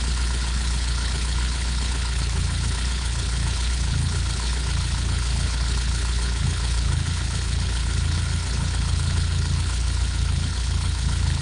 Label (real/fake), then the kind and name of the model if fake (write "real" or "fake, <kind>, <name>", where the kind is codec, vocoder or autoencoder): fake, codec, HILCodec